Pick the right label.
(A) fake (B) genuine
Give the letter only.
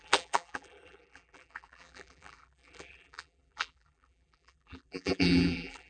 A